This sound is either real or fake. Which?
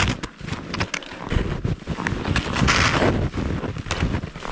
real